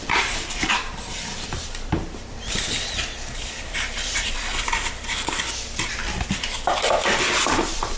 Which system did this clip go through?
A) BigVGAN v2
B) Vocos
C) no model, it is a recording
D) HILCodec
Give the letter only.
A